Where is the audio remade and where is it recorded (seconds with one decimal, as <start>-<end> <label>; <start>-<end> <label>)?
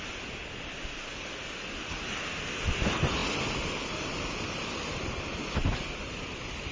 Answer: 0.0-0.4 recorded; 0.4-1.3 remade; 1.3-3.2 recorded; 3.2-4.9 remade; 4.9-5.6 recorded; 5.6-6.7 remade